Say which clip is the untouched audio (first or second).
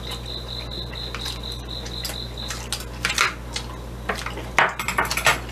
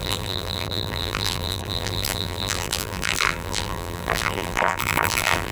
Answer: first